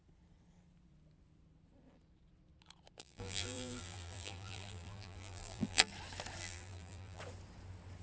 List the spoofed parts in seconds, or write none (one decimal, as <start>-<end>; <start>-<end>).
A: 3.0-5.9; 6.4-7.2